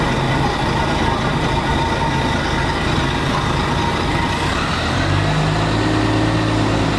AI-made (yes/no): no